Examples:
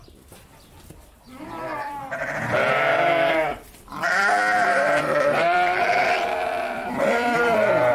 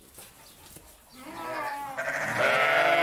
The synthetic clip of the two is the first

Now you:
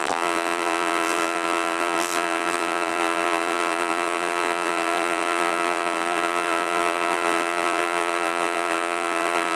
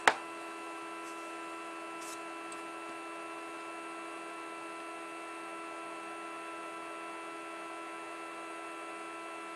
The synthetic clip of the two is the first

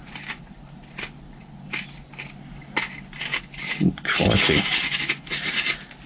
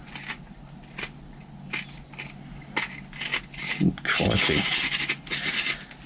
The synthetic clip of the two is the first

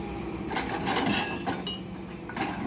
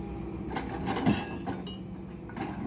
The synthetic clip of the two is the first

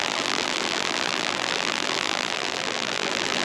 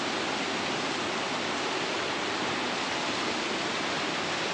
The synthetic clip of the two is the first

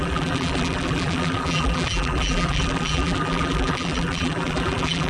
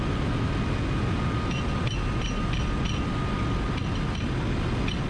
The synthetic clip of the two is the first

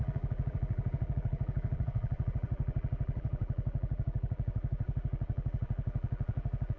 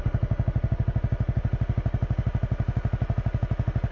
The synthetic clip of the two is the first